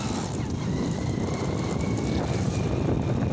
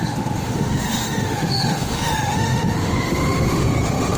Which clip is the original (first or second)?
first